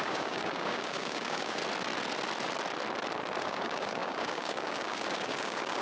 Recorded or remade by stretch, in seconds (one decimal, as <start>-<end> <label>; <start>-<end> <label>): 0.0-1.6 remade; 1.6-3.4 recorded; 3.4-5.8 remade